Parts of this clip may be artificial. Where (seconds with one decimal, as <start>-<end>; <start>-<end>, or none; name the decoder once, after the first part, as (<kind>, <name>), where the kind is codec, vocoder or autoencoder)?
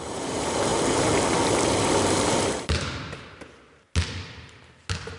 none